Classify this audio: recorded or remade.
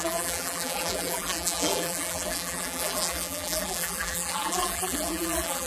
remade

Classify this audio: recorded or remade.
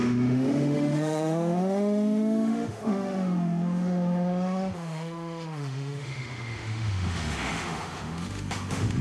remade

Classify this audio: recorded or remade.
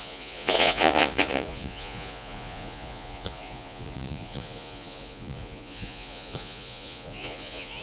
remade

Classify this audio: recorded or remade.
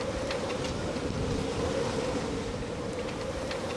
remade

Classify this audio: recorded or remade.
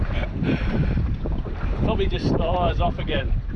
remade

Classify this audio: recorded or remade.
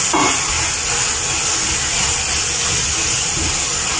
recorded